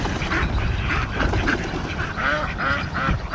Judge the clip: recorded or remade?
remade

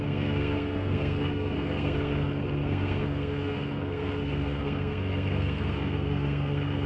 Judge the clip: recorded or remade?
remade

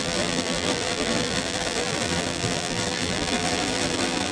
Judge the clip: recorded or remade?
remade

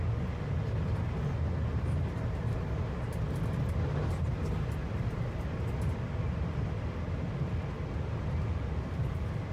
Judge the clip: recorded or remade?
recorded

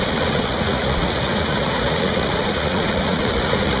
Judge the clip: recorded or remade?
remade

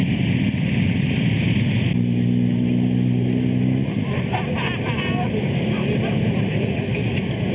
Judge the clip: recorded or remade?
recorded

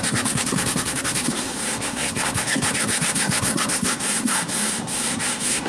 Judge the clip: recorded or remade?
remade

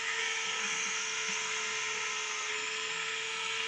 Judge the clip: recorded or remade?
remade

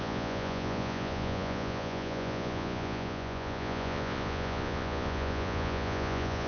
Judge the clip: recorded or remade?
remade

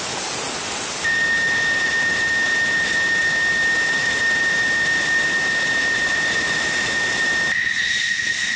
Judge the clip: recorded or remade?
recorded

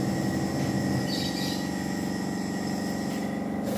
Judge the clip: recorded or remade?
recorded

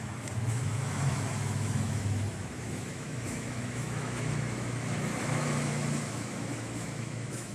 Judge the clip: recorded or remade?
remade